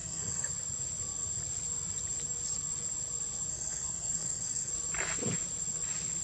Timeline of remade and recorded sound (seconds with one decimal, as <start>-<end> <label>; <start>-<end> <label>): 0.0-0.5 remade; 0.5-3.5 recorded; 3.5-4.7 remade; 4.7-6.2 recorded